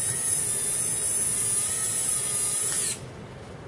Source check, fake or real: real